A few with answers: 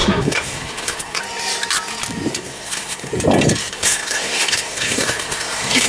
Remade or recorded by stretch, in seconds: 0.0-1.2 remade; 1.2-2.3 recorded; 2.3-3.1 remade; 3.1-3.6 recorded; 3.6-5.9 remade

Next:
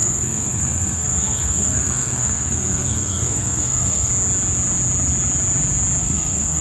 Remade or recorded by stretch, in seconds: 0.0-4.1 remade; 4.1-6.0 recorded; 6.0-6.6 remade

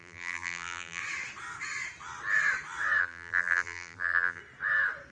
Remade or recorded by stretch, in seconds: 0.0-1.0 remade; 1.0-3.0 recorded; 3.0-4.4 remade; 4.4-5.1 recorded

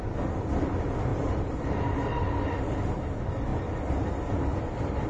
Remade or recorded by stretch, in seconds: 0.0-1.1 recorded; 1.1-2.2 remade; 2.2-5.1 recorded